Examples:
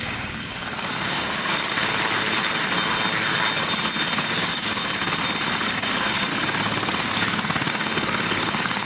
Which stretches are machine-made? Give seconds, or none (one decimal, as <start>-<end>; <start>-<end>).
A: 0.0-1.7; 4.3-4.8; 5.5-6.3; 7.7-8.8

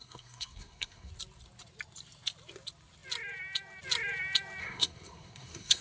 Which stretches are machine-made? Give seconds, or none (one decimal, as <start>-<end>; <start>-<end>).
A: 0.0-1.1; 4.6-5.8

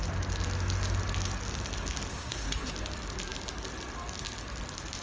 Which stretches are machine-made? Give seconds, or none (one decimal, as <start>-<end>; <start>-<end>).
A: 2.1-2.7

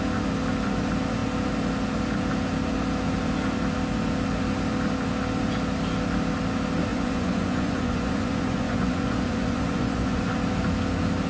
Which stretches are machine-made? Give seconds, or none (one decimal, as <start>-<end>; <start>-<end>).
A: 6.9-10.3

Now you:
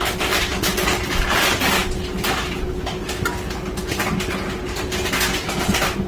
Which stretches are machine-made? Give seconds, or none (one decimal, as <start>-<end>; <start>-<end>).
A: none

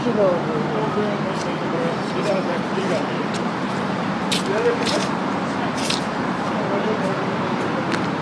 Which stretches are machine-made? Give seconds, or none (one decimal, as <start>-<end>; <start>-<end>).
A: 1.6-6.5